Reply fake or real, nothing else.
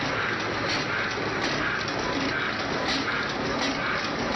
real